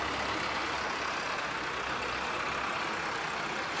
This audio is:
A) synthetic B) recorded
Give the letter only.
B